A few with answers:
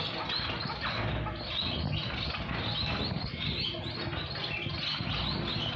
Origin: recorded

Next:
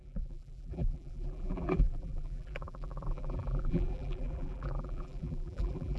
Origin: remade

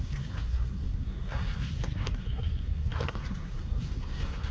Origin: remade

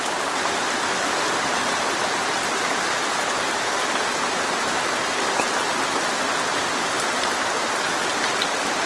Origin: recorded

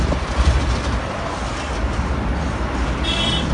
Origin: recorded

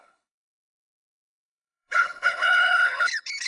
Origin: remade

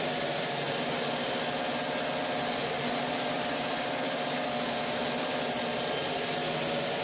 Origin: recorded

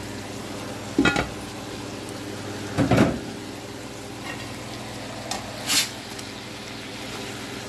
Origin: recorded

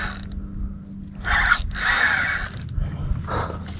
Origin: recorded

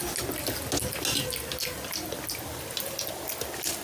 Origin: recorded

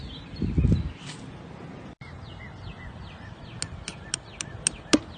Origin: recorded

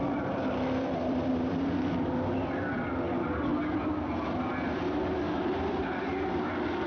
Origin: remade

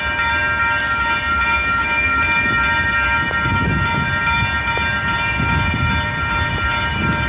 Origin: recorded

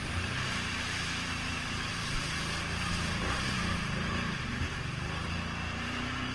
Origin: recorded